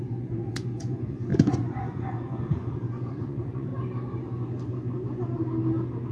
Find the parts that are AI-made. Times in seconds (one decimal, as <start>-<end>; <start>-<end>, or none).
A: 0.0-3.7